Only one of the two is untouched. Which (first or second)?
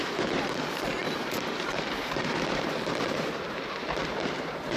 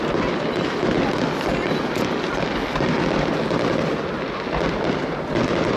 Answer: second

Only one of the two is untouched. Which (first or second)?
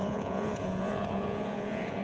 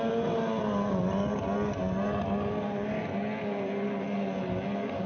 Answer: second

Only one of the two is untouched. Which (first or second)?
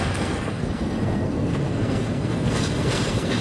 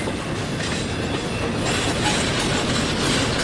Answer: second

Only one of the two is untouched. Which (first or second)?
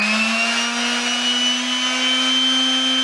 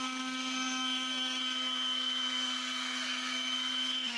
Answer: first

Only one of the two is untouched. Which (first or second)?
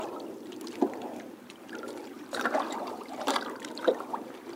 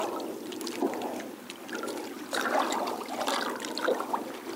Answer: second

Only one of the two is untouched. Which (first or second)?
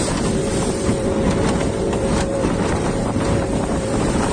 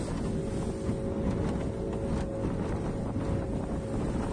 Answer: second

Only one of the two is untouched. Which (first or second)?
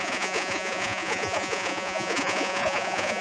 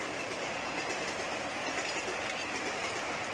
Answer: second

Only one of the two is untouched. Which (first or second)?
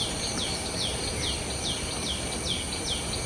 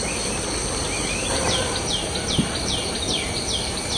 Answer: first